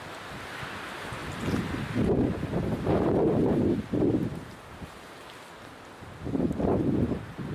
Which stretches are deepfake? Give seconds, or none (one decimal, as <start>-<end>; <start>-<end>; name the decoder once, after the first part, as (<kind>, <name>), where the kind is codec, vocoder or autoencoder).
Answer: none